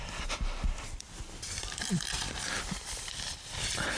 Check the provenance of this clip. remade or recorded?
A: remade